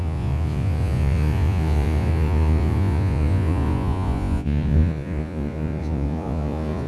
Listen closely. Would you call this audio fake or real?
fake